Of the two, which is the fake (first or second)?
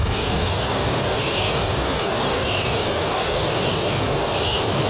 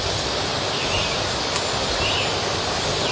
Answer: first